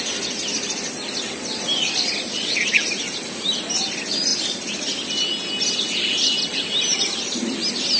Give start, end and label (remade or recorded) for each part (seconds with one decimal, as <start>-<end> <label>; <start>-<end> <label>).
0.0-8.0 recorded